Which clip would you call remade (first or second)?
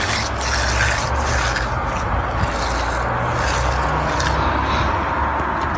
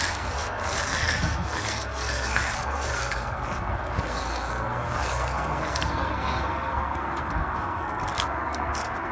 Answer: second